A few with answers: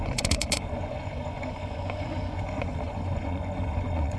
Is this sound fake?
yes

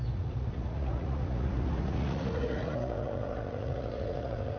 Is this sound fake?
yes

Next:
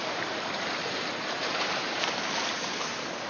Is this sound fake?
yes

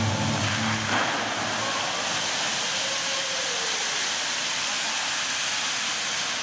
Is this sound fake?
no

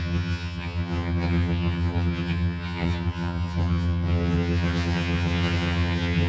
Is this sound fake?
yes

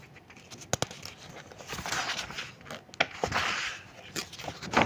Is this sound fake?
no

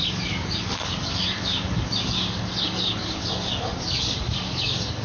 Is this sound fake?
yes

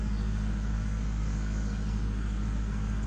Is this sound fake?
yes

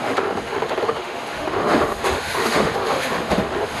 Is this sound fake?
yes